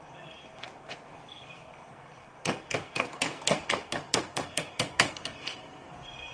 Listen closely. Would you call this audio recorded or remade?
remade